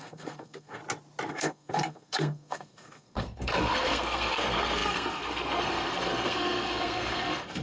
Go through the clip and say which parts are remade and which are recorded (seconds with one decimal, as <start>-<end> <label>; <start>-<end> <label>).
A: 0.0-0.8 remade; 0.8-1.3 recorded; 1.3-7.6 remade